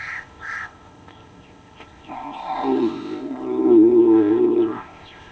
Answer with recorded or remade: remade